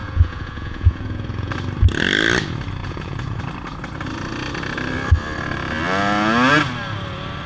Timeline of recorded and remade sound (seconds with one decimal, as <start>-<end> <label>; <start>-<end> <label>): 0.0-1.5 remade; 1.5-2.8 recorded; 2.8-3.4 remade; 3.4-7.5 recorded